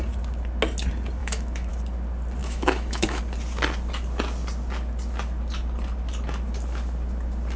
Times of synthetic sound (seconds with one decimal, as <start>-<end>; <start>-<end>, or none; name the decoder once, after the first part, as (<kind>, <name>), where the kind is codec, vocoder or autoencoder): 1.2-1.7 (autoencoder, DAC-VAE); 2.4-3.2